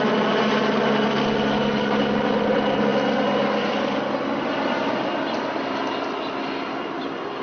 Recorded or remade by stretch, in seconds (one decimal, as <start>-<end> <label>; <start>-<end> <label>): 0.0-7.4 recorded